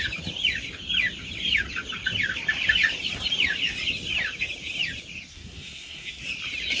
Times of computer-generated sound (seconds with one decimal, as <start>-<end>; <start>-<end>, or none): 5.3-6.2